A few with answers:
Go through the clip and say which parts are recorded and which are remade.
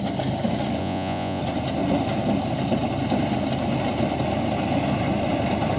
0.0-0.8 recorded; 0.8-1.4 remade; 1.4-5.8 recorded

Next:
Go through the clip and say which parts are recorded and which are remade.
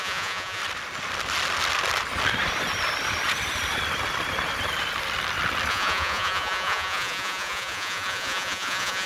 0.0-0.6 remade; 0.6-5.7 recorded; 5.7-9.1 remade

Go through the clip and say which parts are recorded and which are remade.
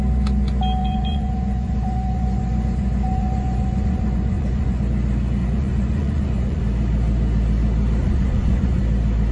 0.0-0.8 recorded; 0.8-4.8 remade; 4.8-5.4 recorded; 5.4-6.6 remade; 6.6-8.0 recorded; 8.0-8.8 remade; 8.8-9.3 recorded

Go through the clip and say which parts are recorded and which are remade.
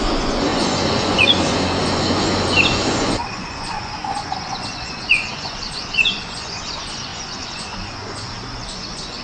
0.0-9.2 remade